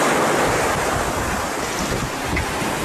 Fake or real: real